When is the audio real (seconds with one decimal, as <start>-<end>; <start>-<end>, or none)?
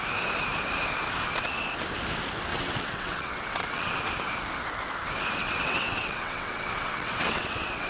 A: 0.0-2.5; 4.0-5.4